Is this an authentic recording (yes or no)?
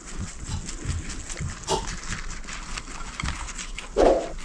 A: yes